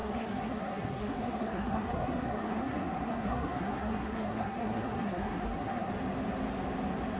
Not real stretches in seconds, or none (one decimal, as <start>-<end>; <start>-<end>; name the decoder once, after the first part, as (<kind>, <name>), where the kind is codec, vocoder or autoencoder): 0.0-5.9 (codec, SNAC)

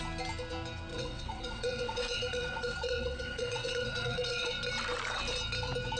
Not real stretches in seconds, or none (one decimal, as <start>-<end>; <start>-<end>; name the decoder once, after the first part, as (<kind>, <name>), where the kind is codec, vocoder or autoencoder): 0.9-4.5 (vocoder, WaveNeXt)

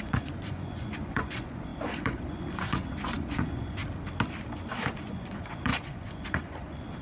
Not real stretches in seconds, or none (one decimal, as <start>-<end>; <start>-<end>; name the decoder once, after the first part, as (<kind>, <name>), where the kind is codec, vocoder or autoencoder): 0.0-3.8 (vocoder, Vocos); 4.8-7.0